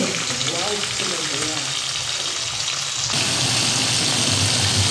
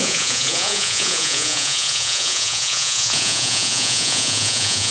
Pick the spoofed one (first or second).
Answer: second